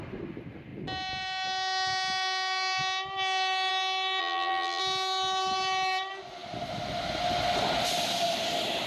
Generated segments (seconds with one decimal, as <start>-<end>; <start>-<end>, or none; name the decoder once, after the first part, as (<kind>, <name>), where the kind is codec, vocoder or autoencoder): 4.2-4.8 (vocoder, BigVGAN v2)